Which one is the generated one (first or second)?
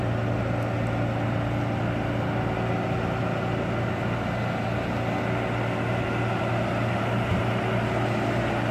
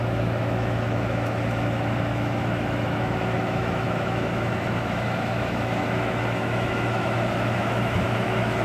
second